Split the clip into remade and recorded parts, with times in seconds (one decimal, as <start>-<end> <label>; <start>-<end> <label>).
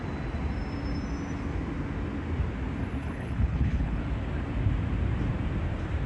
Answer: 0.0-3.0 recorded; 3.0-4.0 remade; 4.0-6.1 recorded